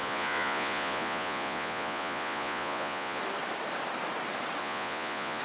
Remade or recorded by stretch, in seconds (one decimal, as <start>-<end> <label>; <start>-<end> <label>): 0.0-3.2 remade; 3.2-4.6 recorded; 4.6-5.4 remade